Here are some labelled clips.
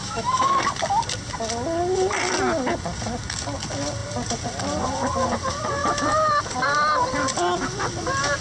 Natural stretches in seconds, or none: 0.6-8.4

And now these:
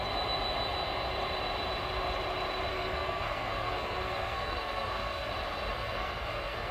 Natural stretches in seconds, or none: 0.0-2.7; 5.3-5.7

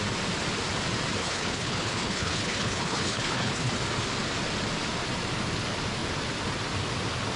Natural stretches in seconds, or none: 0.0-1.2; 3.7-7.4

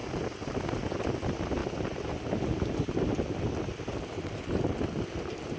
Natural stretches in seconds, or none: 0.0-1.6; 5.0-5.6

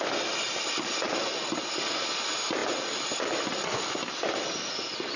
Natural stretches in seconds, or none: 0.0-5.2